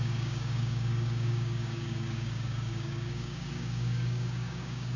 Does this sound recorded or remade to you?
remade